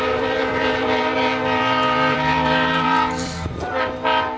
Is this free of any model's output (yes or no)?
no